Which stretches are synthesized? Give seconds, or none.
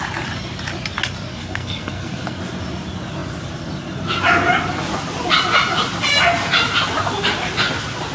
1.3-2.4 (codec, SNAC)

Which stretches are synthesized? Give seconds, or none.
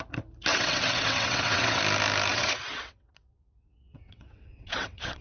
0.5-1.8 (vocoder, WaveNeXt); 2.3-5.2